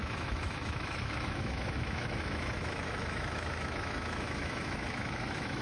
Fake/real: fake